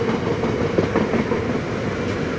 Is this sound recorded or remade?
recorded